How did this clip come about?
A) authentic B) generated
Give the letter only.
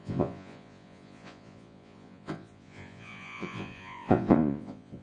B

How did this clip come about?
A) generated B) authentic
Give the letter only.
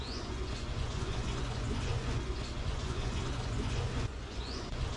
A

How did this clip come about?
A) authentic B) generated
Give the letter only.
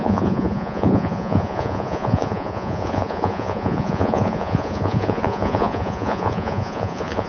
B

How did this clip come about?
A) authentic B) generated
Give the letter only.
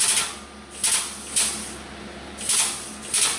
A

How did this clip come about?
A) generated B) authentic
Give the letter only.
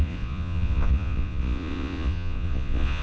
A